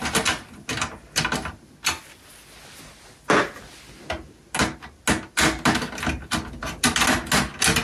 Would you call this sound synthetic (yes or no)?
no